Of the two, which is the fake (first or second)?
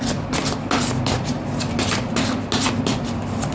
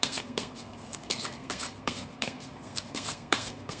second